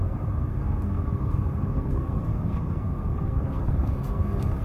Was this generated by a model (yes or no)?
yes